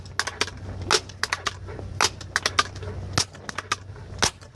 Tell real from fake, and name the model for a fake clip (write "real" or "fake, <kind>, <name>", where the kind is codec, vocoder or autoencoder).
real